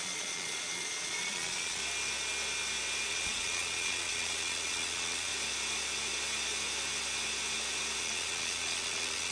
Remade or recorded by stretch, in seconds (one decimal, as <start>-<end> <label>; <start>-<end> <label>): 0.0-1.8 remade; 1.8-3.1 recorded; 3.1-5.3 remade; 5.3-8.0 recorded; 8.0-9.3 remade